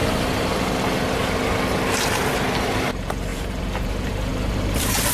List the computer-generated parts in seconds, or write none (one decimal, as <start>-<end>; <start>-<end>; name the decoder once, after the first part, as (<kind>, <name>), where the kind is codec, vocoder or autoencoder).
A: 2.9-5.1 (vocoder, BigVGAN v2)